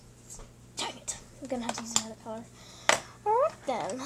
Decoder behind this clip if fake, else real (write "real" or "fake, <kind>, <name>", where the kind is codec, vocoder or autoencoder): real